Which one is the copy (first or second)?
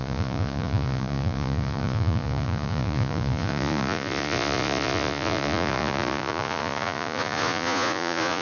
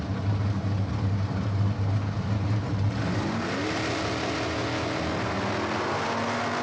first